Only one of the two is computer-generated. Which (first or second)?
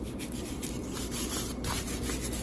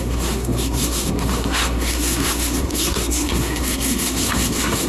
second